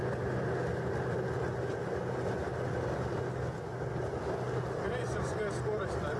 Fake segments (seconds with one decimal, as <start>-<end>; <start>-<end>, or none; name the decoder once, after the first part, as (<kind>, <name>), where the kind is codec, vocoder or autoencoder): none